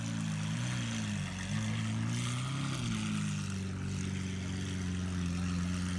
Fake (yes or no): no